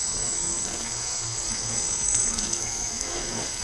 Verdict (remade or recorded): remade